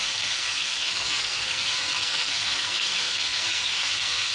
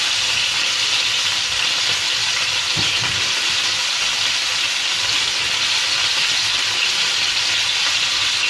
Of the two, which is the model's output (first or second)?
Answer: first